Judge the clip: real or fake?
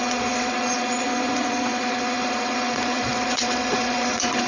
fake